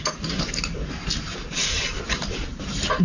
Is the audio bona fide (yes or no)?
no